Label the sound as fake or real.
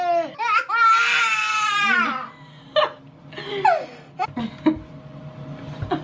real